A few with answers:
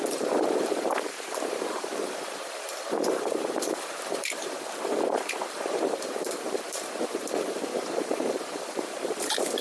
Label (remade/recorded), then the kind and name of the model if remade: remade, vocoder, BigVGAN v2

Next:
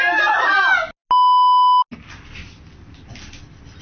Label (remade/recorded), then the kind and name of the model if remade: recorded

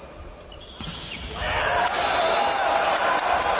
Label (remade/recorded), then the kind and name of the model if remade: recorded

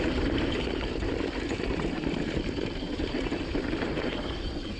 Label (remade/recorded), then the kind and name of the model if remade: remade, vocoder, BigVGAN v2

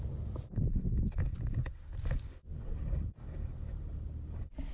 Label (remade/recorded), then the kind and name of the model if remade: recorded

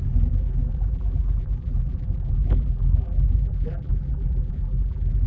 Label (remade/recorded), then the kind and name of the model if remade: remade, vocoder, BigVGAN v2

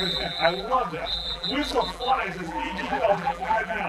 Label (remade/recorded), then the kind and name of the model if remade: remade, vocoder, BigVGAN v2